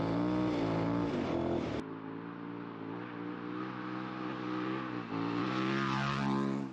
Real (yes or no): yes